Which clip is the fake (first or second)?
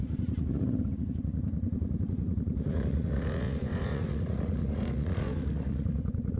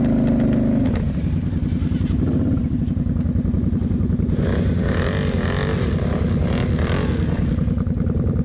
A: first